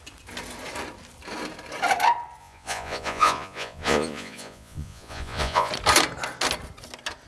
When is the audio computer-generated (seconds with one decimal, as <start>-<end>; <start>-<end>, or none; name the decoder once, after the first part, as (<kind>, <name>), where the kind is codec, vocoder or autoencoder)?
2.4-5.7 (vocoder, Vocos)